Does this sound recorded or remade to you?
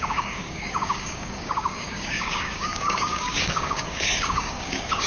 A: remade